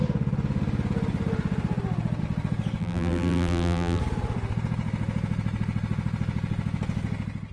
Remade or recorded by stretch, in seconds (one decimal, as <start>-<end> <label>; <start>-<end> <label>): 0.0-2.8 recorded; 2.8-4.0 remade; 4.0-7.5 recorded